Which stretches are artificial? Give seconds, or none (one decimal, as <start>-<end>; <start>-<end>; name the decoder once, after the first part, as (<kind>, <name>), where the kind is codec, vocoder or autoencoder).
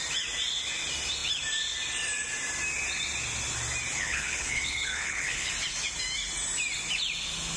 3.9-5.5 (codec, HILCodec)